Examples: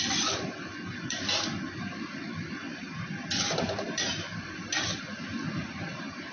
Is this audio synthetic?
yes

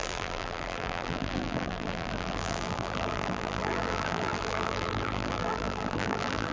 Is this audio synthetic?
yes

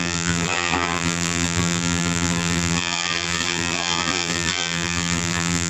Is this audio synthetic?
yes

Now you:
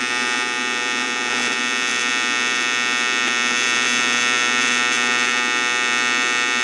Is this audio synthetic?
no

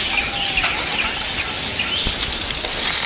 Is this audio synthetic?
yes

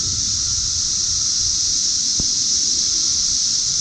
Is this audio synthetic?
no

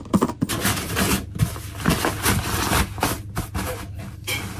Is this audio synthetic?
no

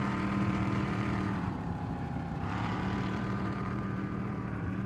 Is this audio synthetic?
yes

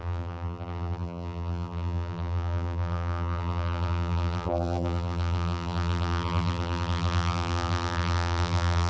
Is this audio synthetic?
yes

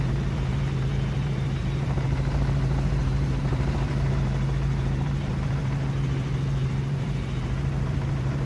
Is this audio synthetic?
yes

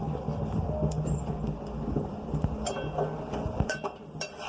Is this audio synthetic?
yes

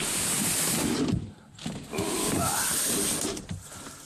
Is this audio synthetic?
no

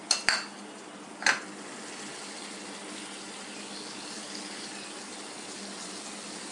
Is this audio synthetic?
no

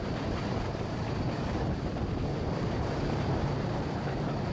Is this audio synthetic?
yes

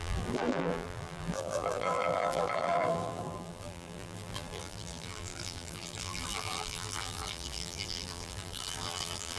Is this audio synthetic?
yes